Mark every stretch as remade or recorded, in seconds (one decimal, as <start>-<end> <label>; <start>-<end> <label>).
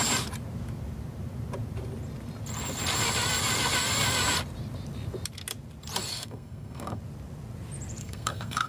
0.0-6.1 recorded; 6.1-7.0 remade; 7.0-8.0 recorded; 8.0-8.7 remade